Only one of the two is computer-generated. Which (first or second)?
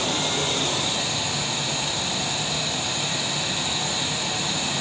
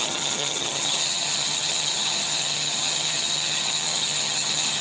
second